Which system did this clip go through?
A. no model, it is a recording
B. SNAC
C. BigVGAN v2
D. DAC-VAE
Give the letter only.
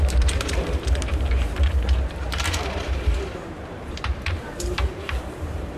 C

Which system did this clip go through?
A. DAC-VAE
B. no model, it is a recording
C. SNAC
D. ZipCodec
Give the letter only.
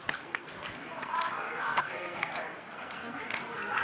C